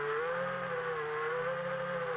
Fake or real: real